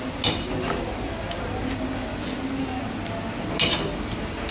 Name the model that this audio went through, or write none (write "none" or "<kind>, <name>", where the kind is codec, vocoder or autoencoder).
none